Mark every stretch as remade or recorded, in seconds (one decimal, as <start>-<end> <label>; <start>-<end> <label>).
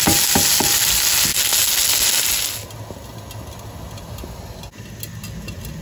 0.0-5.8 recorded